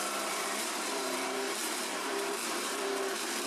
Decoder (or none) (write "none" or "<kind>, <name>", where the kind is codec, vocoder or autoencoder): vocoder, BigVGAN v2